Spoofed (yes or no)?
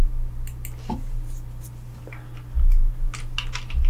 no